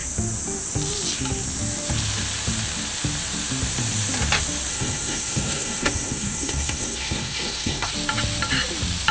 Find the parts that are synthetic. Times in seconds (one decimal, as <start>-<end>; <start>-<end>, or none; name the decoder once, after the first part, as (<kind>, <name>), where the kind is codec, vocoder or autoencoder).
4.7-7.9 (codec, SNAC)